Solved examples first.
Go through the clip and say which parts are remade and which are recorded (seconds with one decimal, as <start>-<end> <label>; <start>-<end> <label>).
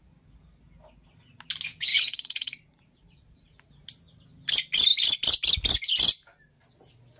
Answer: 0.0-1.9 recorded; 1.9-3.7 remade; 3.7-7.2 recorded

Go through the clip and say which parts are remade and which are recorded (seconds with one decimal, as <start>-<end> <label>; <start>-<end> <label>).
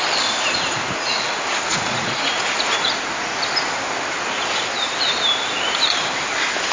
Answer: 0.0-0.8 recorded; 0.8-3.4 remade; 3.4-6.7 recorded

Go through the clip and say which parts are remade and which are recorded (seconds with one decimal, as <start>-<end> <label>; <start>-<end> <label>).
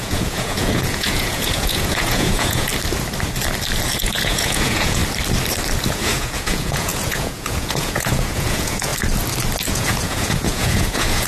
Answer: 0.0-2.7 remade; 2.7-4.0 recorded; 4.0-5.0 remade; 5.0-5.9 recorded; 5.9-8.9 remade; 8.9-9.7 recorded; 9.7-11.3 remade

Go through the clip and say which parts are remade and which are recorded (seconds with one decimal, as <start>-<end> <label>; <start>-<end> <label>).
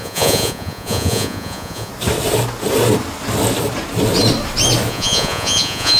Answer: 0.0-1.9 remade; 1.9-4.9 recorded; 4.9-6.0 remade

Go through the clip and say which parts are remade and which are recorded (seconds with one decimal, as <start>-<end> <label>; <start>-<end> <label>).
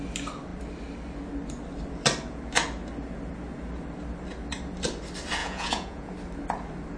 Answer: 0.0-5.4 recorded; 5.4-6.1 remade; 6.1-7.0 recorded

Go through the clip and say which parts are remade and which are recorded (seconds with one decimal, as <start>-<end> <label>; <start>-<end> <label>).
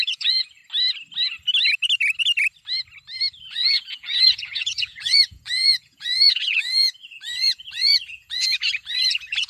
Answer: 0.0-0.6 remade; 0.6-3.4 recorded; 3.4-9.5 remade